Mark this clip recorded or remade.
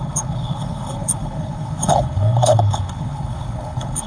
remade